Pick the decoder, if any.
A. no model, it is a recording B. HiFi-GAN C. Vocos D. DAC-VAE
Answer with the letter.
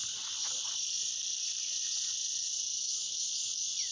A